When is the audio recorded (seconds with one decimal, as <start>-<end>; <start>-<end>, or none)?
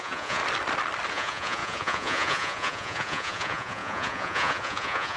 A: 0.4-1.1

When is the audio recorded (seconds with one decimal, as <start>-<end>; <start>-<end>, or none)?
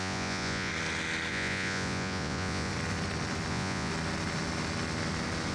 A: 0.7-1.3; 2.7-3.5; 3.9-5.5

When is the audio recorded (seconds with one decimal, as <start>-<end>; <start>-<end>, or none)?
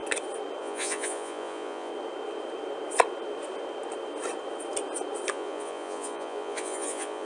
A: 0.0-0.6; 1.9-5.3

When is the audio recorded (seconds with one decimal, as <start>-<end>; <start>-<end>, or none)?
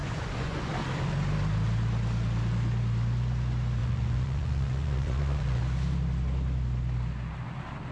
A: 0.7-3.8; 5.6-7.9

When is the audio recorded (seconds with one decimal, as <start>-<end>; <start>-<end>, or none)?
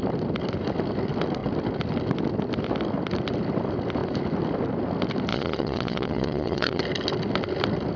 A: 0.0-5.3; 6.8-8.0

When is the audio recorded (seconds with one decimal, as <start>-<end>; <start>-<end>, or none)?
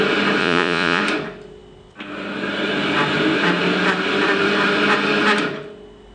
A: 0.0-0.4; 1.0-6.1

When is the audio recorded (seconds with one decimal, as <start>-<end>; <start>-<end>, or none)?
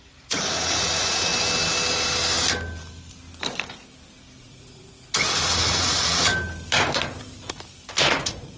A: 1.3-4.4; 6.3-8.0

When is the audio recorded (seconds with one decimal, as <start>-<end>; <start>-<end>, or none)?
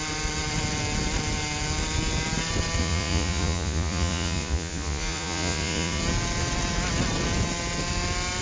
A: 0.0-2.8; 6.0-8.4